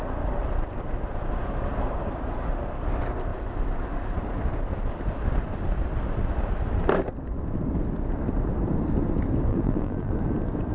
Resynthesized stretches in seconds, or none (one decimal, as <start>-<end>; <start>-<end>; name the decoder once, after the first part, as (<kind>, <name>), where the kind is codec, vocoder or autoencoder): 9.5-10.1 (vocoder, BigVGAN v2)